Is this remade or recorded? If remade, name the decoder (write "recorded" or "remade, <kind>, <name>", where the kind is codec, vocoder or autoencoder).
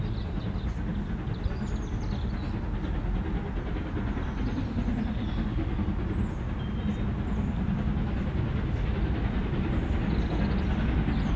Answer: recorded